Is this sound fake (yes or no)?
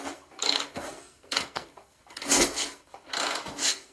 yes